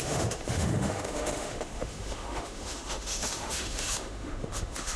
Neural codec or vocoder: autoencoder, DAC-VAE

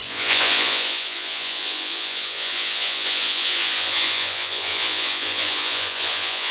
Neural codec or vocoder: vocoder, Vocos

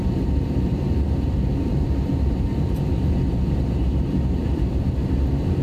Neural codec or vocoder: vocoder, BigVGAN v2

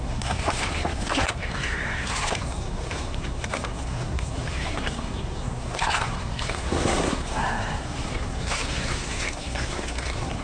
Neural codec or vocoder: codec, SNAC